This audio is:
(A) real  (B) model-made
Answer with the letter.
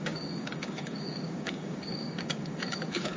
B